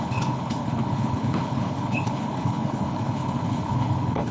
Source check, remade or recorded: remade